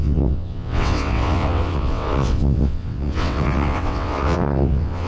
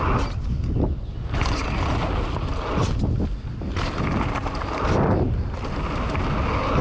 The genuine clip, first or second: second